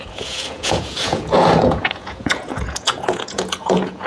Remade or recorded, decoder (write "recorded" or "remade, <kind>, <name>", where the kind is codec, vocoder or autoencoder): remade, vocoder, Vocos